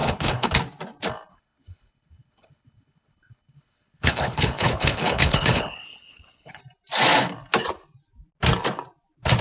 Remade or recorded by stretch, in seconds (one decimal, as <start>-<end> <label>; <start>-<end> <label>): 0.0-0.5 remade; 0.5-1.3 recorded; 1.3-6.6 remade; 6.6-9.4 recorded

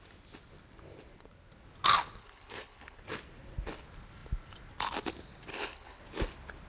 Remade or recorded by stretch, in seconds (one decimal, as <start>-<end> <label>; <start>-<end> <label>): 0.0-2.2 recorded; 2.2-3.0 remade; 3.0-5.5 recorded; 5.5-6.0 remade; 6.0-6.7 recorded

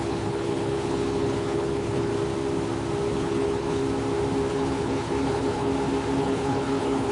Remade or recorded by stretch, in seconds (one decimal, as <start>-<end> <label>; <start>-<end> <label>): 0.0-2.1 remade; 2.1-3.1 recorded; 3.1-3.8 remade; 3.8-4.5 recorded; 4.5-5.7 remade; 5.7-6.2 recorded; 6.2-7.1 remade

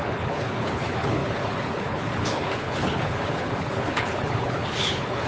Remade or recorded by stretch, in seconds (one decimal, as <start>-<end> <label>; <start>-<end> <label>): 0.0-5.3 remade

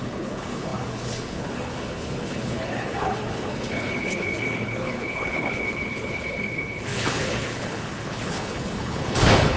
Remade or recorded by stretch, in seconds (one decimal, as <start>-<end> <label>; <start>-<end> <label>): 0.0-9.6 remade

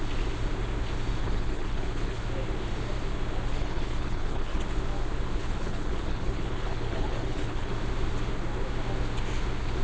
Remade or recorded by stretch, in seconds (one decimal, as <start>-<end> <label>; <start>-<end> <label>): 0.0-1.2 recorded; 1.2-2.2 remade; 2.2-3.5 recorded; 3.5-4.6 remade; 4.6-5.4 recorded; 5.4-7.7 remade; 7.7-9.8 recorded